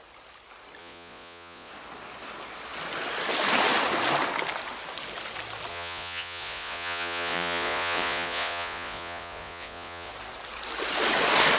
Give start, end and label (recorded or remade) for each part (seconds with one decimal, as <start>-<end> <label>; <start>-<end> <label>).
0.0-0.8 recorded; 0.8-1.7 remade; 1.7-5.7 recorded; 5.7-10.1 remade; 10.1-11.6 recorded